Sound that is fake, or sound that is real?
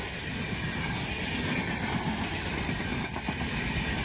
real